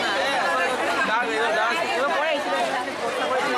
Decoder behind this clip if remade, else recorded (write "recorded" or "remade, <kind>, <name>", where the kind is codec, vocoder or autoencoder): recorded